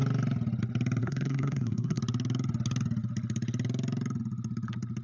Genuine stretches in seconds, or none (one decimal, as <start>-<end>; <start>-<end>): 0.0-1.0; 2.0-5.0